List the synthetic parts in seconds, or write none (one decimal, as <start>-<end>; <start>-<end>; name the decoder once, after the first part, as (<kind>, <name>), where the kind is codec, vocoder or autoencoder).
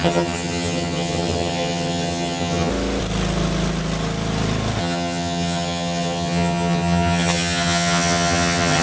0.0-2.7 (vocoder, HiFi-GAN); 4.8-8.8